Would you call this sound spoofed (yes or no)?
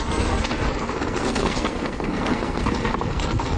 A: yes